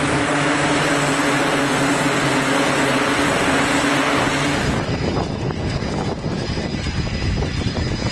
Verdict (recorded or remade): recorded